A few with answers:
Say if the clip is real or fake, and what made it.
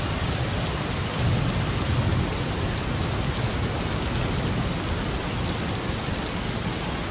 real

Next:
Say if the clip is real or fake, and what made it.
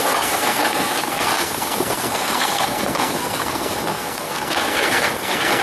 fake, codec, SNAC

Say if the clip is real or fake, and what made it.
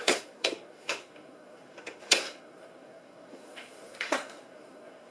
fake, codec, SNAC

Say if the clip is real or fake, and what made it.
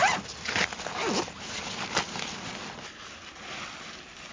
real